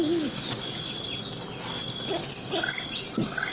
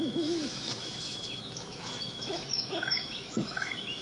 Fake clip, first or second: second